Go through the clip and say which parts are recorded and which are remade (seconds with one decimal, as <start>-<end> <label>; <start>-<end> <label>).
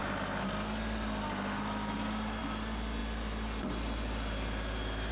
0.0-5.1 recorded